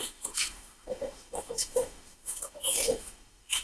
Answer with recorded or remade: remade